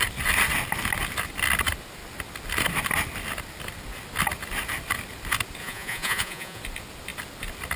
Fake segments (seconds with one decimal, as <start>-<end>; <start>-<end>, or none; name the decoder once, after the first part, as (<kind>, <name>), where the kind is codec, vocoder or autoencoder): 5.6-6.6 (vocoder, Vocos)

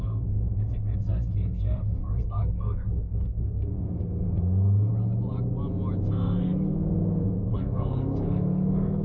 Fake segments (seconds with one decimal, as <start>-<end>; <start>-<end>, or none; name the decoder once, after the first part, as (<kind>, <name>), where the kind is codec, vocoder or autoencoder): 0.0-4.9 (codec, SNAC); 6.0-9.0

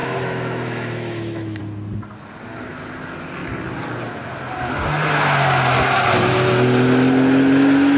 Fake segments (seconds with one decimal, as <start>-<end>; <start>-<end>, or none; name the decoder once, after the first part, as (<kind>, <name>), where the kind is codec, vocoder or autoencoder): 0.0-1.6 (autoencoder, DAC-VAE)

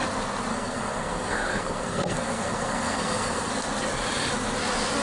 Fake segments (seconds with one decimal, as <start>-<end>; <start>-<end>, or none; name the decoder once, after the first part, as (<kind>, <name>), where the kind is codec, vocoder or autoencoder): 0.5-3.5 (codec, SNAC)

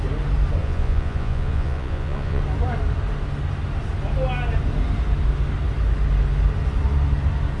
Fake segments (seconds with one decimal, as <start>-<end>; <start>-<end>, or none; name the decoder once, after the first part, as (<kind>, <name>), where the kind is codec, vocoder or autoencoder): 0.6-2.4 (vocoder, Vocos)

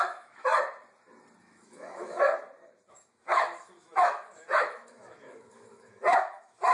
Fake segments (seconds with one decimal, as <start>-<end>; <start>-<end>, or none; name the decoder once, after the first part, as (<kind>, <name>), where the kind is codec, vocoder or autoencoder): 0.0-0.5 (autoencoder, DAC-VAE); 1.4-2.3; 2.9-6.7

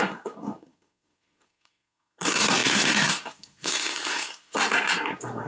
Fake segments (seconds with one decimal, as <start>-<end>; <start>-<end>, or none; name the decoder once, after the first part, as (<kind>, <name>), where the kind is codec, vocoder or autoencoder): 0.0-5.5 (codec, SNAC)